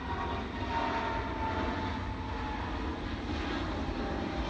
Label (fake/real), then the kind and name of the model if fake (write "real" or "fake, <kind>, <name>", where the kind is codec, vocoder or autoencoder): real